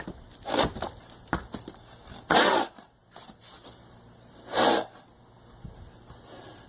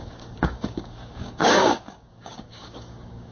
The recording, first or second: first